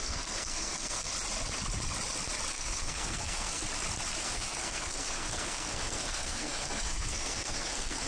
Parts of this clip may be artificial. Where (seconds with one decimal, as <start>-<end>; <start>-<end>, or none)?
0.0-1.1; 2.5-3.6; 4.2-8.1